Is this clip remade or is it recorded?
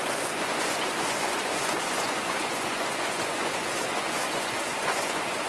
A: remade